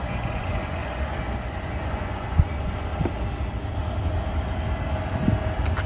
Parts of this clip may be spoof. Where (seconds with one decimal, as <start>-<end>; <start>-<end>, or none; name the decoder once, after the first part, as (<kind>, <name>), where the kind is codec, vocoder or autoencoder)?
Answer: 0.0-2.9 (vocoder, Vocos)